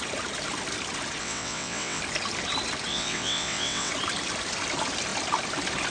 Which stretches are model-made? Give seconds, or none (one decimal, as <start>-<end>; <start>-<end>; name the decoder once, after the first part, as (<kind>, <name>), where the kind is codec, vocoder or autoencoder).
1.2-2.0 (vocoder, WaveNeXt); 2.9-3.9